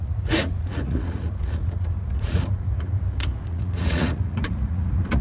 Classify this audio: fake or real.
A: fake